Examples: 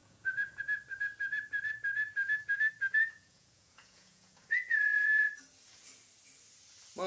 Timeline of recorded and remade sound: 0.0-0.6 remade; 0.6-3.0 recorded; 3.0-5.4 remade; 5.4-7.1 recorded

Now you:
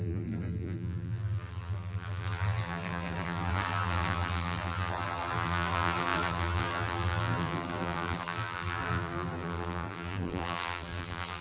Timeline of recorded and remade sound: 0.0-11.4 remade